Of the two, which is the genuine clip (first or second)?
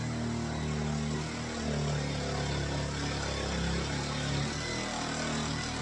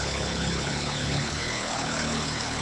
first